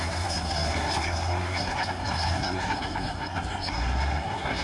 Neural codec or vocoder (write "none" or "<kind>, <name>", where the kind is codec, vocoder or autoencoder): codec, SNAC